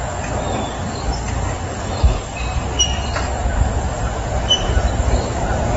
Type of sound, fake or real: real